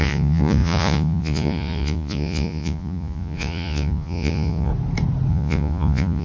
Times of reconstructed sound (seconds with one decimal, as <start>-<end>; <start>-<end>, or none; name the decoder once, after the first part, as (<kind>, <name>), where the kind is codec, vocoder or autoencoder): 0.0-4.7 (vocoder, Vocos); 5.3-6.2